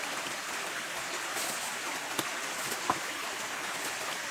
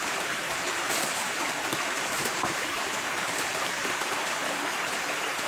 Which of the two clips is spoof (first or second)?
second